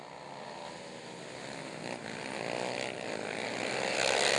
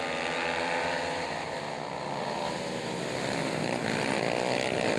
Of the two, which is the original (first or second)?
first